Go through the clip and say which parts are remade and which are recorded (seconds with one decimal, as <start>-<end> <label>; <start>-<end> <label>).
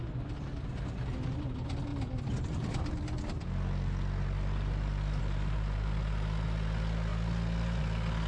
0.0-8.3 recorded